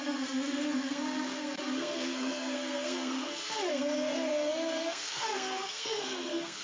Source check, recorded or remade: remade